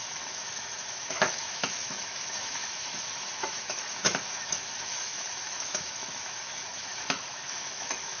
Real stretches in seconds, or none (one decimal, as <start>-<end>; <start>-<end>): none